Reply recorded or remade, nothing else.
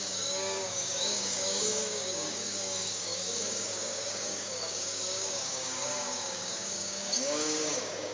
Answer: remade